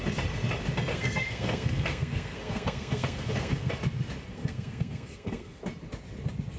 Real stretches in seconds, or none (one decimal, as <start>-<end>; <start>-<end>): 0.0-0.9; 3.7-4.3; 5.6-6.6